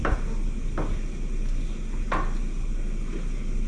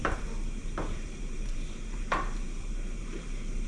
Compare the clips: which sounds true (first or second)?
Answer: first